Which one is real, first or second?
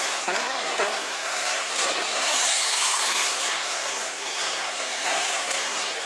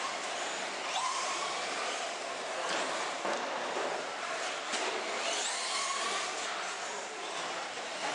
second